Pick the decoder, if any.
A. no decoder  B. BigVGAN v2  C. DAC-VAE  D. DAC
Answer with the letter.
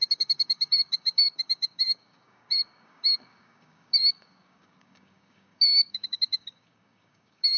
D